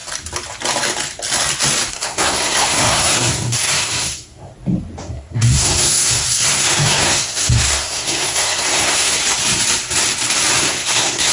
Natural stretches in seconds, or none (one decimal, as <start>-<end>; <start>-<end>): 0.0-1.9; 4.5-5.0; 9.2-10.6